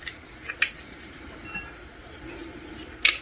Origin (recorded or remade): recorded